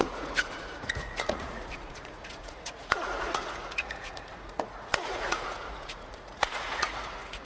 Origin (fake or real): fake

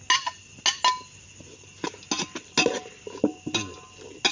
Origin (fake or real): real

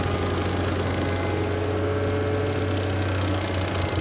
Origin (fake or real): real